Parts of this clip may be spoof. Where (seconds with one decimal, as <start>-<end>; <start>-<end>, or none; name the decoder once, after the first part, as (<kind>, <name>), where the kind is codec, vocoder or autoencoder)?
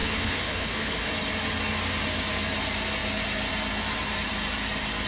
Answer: 0.0-1.1 (codec, HILCodec)